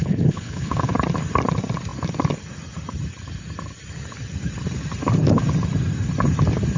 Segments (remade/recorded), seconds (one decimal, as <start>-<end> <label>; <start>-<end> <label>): 0.0-0.9 remade; 0.9-6.8 recorded